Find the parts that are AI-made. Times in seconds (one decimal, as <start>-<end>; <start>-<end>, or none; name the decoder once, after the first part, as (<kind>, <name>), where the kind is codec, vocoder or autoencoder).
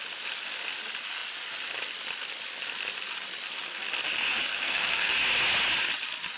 4.5-5.1 (codec, SNAC)